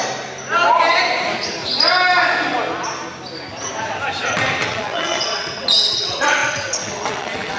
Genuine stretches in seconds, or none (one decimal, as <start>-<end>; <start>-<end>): 0.0-4.6